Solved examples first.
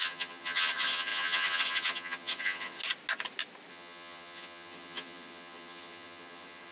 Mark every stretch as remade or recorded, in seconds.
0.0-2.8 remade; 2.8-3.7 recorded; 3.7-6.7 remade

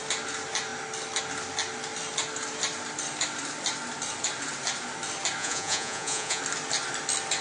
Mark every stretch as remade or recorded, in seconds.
0.0-5.4 recorded; 5.4-6.4 remade; 6.4-7.4 recorded

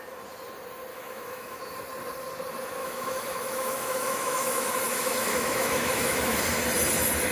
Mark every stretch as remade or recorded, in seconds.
0.0-0.9 recorded; 0.9-1.6 remade; 1.6-2.8 recorded; 2.8-6.4 remade; 6.4-7.3 recorded

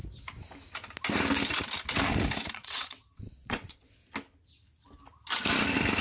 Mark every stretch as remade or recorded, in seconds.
0.0-2.5 recorded; 2.5-4.0 remade; 4.0-6.0 recorded

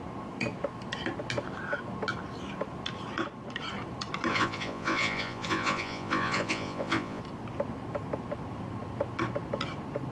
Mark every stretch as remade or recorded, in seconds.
0.0-4.3 recorded; 4.3-7.2 remade; 7.2-10.1 recorded

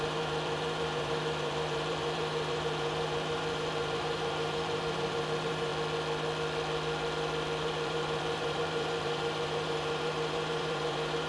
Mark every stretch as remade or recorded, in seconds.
0.0-5.7 remade; 5.7-7.6 recorded; 7.6-11.3 remade